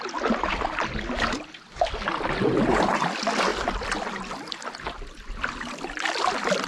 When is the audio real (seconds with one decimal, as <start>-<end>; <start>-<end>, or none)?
0.0-6.7